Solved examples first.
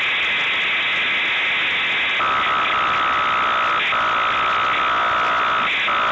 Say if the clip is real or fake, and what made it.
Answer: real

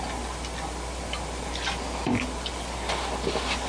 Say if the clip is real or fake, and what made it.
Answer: real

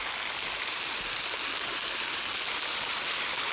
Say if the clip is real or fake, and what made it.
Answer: real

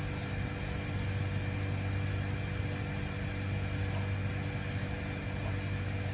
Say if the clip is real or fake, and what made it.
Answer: real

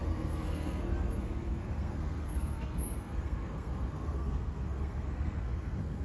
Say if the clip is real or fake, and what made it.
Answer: fake, codec, SNAC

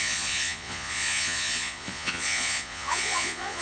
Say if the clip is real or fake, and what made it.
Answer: fake, vocoder, Vocos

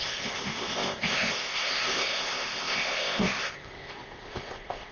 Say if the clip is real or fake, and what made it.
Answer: fake, codec, ZipCodec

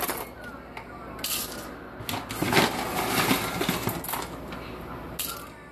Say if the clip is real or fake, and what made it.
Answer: real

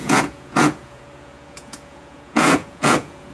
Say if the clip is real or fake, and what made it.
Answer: fake, vocoder, Vocos